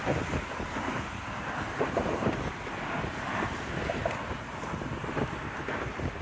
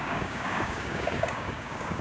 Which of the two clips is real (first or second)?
first